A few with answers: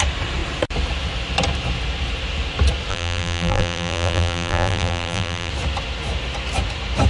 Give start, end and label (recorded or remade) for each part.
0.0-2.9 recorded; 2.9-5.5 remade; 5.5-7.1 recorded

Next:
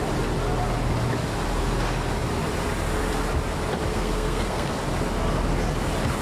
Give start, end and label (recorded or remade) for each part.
0.0-3.9 recorded; 3.9-4.7 remade; 4.7-6.2 recorded

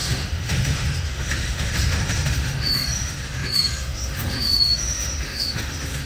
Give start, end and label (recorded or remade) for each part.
0.0-6.1 remade

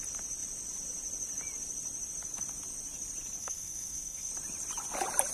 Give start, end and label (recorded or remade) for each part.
0.0-3.4 recorded; 3.4-4.3 remade; 4.3-5.3 recorded

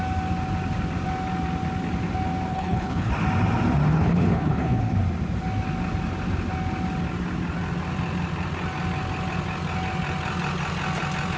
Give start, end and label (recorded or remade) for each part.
0.0-2.5 recorded; 2.5-3.1 remade; 3.1-3.9 recorded; 3.9-4.9 remade; 4.9-11.4 recorded

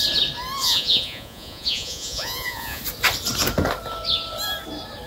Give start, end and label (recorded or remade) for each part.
0.0-0.6 recorded; 0.6-2.8 remade; 2.8-5.1 recorded

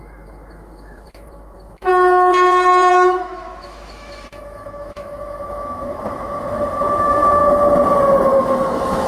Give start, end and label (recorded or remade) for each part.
0.0-1.9 remade; 1.9-2.9 recorded; 2.9-7.4 remade; 7.4-8.4 recorded; 8.4-9.1 remade

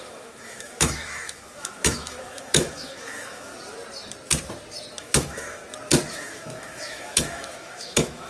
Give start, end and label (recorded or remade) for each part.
0.0-3.5 remade; 3.5-5.0 recorded; 5.0-5.6 remade; 5.6-6.1 recorded; 6.1-8.3 remade